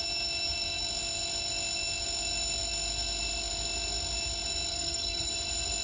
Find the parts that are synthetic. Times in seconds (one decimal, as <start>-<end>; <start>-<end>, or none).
4.7-5.3